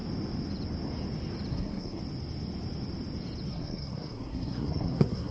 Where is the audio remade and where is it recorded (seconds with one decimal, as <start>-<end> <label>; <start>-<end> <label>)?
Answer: 0.0-1.5 recorded; 1.5-2.0 remade; 2.0-3.5 recorded; 3.5-5.3 remade